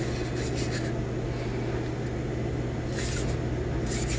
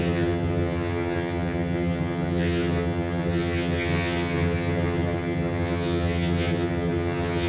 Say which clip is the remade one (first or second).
second